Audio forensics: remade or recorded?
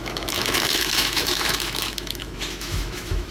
remade